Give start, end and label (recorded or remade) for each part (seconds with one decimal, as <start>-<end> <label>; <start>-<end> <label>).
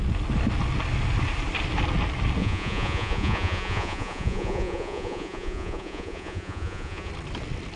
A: 0.0-2.4 recorded; 2.4-7.1 remade; 7.1-7.8 recorded